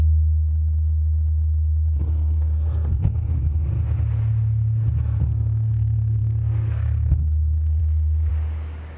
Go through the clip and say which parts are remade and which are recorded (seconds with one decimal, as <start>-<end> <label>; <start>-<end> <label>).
0.0-2.0 recorded; 2.0-3.4 remade; 3.4-5.2 recorded; 5.2-8.3 remade; 8.3-9.0 recorded